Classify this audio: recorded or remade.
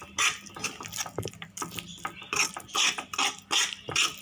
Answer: recorded